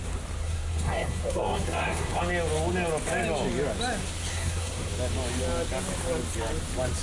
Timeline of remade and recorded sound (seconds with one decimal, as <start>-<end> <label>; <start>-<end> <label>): 0.0-0.4 recorded; 0.4-2.2 remade; 2.2-4.3 recorded; 4.3-4.9 remade; 4.9-7.0 recorded